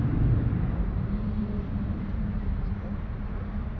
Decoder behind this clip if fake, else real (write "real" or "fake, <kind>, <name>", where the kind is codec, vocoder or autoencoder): fake, vocoder, BigVGAN v2